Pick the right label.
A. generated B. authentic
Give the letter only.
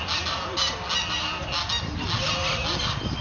B